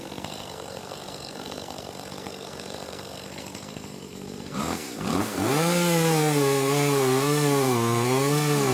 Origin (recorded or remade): remade